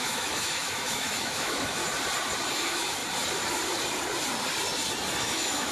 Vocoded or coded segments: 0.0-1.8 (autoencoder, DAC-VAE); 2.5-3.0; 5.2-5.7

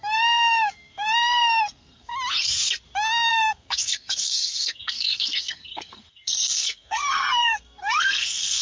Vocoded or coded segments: 0.0-2.1 (codec, SNAC); 3.3-8.6